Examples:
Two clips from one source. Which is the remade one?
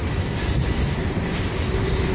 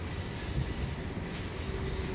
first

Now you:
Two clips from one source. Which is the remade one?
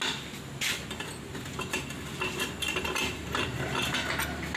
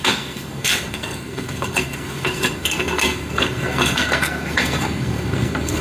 second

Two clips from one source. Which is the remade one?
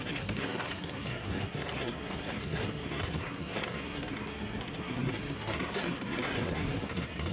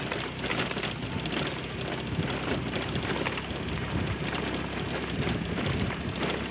first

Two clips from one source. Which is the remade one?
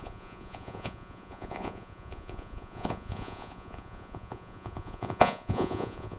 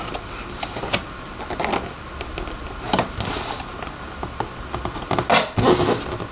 first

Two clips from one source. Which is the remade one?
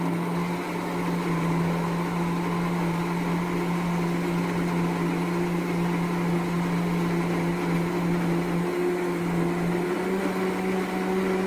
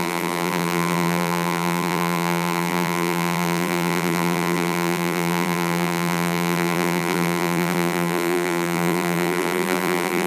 second